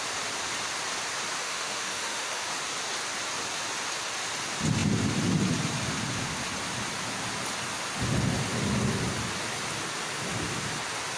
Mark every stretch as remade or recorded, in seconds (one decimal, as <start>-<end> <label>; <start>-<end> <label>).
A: 0.0-1.4 recorded; 1.4-2.4 remade; 2.4-11.2 recorded

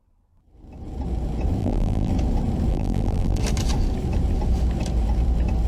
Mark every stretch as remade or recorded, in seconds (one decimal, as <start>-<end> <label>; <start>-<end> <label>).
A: 0.0-1.6 recorded; 1.6-2.1 remade; 2.1-2.7 recorded; 2.7-3.4 remade; 3.4-5.7 recorded

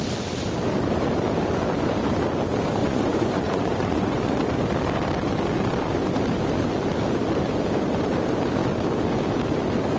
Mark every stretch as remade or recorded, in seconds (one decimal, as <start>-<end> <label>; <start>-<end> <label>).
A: 0.0-2.8 recorded; 2.8-4.4 remade; 4.4-10.0 recorded